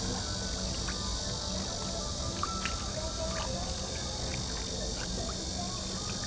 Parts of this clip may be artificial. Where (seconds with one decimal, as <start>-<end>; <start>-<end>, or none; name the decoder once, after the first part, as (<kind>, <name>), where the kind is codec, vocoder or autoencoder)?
none